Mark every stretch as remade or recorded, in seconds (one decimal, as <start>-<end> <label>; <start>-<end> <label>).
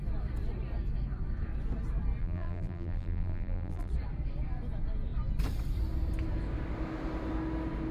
0.0-2.2 recorded; 2.2-3.9 remade; 3.9-7.9 recorded